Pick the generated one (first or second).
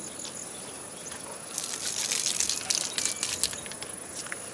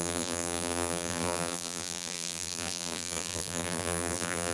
second